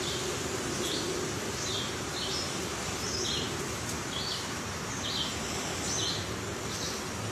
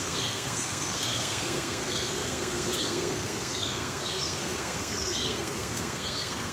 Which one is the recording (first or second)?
first